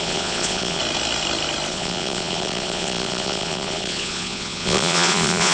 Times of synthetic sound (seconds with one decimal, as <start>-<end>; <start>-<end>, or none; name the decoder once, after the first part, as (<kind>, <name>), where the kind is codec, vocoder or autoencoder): 0.0-0.8 (vocoder, Vocos); 1.7-5.5